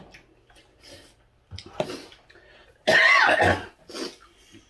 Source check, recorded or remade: recorded